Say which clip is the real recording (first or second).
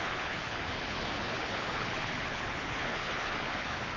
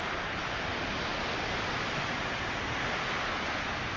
second